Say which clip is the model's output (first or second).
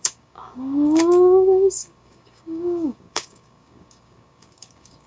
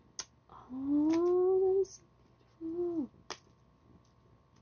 first